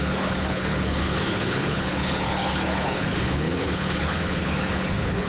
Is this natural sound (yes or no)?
no